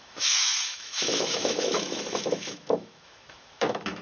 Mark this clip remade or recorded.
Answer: remade